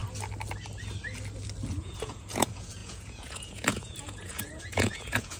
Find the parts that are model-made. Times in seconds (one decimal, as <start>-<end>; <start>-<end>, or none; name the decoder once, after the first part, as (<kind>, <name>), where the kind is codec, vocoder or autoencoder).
1.7-5.4 (vocoder, Vocos)